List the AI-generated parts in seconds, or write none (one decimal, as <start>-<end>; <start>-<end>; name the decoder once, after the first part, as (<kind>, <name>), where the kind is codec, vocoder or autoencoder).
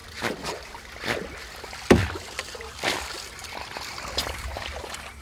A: 0.0-0.8 (vocoder, BigVGAN v2); 2.0-4.8